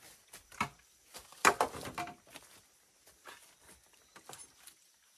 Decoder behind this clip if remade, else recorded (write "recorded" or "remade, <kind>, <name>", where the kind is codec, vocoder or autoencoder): recorded